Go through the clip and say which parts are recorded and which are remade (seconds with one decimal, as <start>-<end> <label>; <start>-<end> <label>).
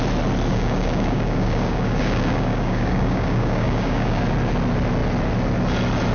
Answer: 0.0-0.5 recorded; 0.5-4.2 remade; 4.2-6.1 recorded